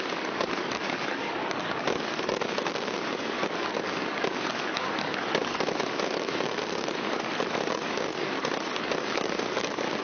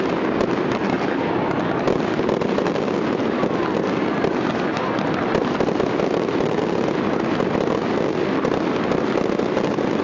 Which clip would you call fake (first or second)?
first